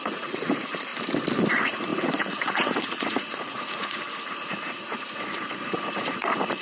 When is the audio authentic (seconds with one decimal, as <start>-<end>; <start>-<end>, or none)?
0.9-1.5

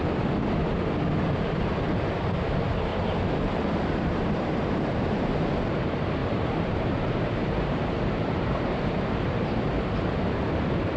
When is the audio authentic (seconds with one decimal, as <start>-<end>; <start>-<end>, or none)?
0.0-2.9; 5.0-6.2; 9.4-11.0

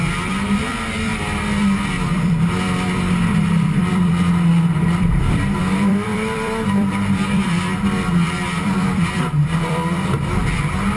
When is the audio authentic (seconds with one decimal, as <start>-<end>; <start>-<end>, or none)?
none

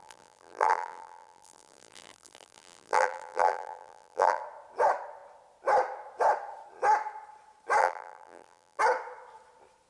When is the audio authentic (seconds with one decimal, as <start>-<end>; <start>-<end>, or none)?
4.4-7.8; 8.8-9.9

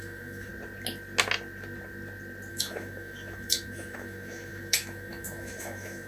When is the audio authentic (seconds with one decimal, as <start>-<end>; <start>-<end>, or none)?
0.5-2.5

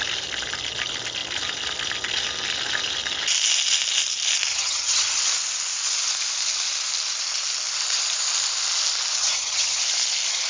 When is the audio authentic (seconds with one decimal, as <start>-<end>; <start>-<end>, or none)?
0.0-4.5; 5.2-9.2; 9.8-10.5

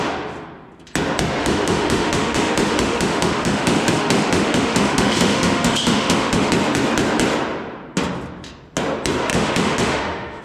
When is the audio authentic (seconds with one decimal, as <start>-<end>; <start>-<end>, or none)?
0.0-1.4; 6.5-9.3